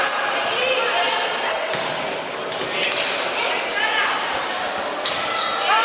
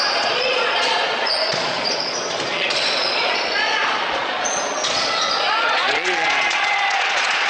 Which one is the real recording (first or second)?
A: first